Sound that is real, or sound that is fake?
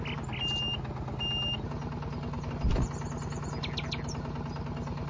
real